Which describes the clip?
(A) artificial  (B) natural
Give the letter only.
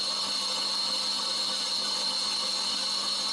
B